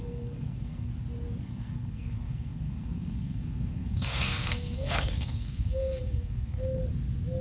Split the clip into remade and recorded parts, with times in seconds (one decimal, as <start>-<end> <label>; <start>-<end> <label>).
0.0-0.9 remade; 0.9-1.4 recorded; 1.4-6.8 remade; 6.8-7.4 recorded